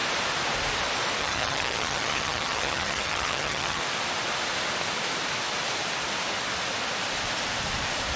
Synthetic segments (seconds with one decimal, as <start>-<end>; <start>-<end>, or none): 1.2-3.8